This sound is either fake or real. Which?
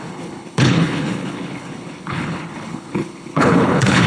fake